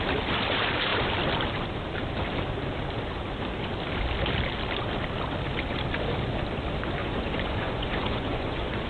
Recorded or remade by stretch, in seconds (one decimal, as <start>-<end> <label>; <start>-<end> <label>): 0.0-7.0 recorded; 7.0-8.9 remade